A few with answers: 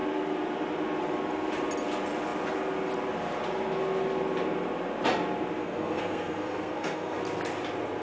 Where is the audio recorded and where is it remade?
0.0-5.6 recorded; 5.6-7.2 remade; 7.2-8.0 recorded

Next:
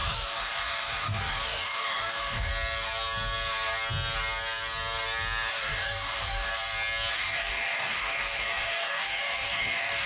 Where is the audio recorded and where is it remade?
0.0-2.5 remade; 2.5-5.5 recorded; 5.5-6.5 remade; 6.5-7.1 recorded; 7.1-10.1 remade